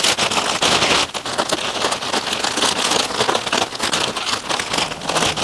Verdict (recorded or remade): recorded